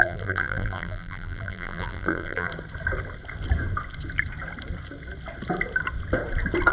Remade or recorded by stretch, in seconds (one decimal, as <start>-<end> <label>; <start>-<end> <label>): 0.0-2.5 remade; 2.5-6.7 recorded

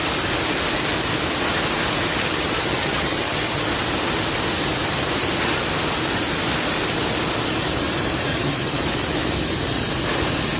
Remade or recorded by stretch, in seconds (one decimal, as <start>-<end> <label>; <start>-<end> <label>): 0.0-2.2 recorded; 2.2-3.6 remade; 3.6-8.3 recorded; 8.3-8.8 remade; 8.8-10.6 recorded

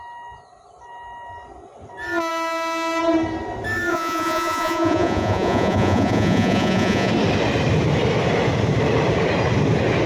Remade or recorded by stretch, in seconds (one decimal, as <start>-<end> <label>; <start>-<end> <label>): 0.0-3.9 recorded; 3.9-7.1 remade; 7.1-10.1 recorded

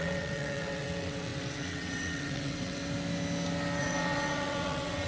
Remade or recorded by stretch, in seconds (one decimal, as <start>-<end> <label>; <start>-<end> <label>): 0.0-2.8 remade; 2.8-3.8 recorded; 3.8-5.1 remade

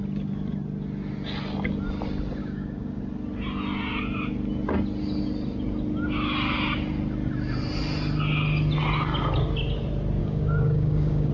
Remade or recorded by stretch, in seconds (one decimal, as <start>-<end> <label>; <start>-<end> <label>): 0.0-2.4 recorded; 2.4-3.0 remade; 3.0-10.2 recorded; 10.2-11.3 remade